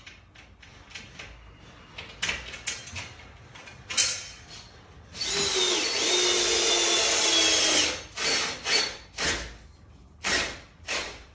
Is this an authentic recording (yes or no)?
yes